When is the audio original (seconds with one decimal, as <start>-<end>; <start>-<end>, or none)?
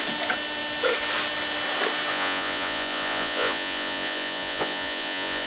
0.0-2.1